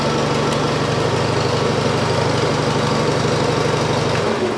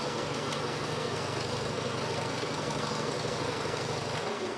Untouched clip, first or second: first